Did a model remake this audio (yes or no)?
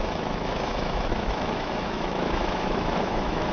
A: yes